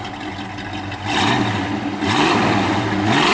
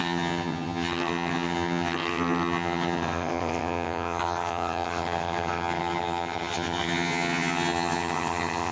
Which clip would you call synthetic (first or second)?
second